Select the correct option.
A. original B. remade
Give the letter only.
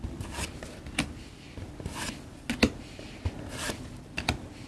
A